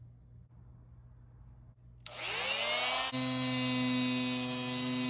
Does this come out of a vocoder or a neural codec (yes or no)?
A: no